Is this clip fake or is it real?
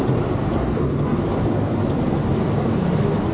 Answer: real